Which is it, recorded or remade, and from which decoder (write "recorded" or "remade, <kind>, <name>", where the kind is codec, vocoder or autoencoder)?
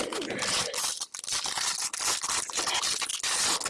recorded